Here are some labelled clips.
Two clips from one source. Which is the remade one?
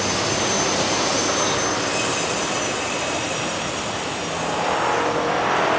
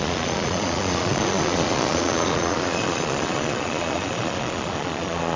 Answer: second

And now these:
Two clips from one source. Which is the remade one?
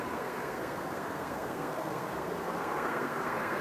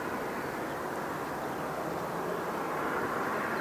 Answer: first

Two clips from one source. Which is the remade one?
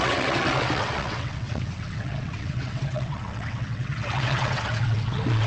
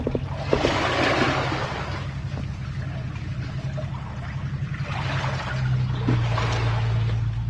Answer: first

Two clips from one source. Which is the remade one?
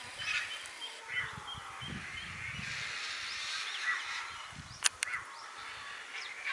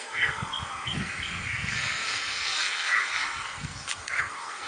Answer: second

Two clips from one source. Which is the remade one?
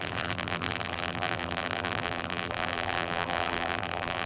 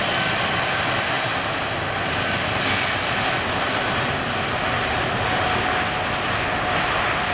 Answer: first